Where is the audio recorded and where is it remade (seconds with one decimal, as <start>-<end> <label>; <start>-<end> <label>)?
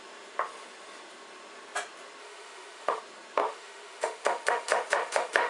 0.0-2.2 recorded; 2.2-3.0 remade; 3.0-3.4 recorded; 3.4-5.5 remade